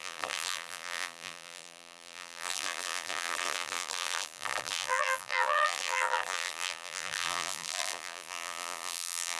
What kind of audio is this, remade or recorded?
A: remade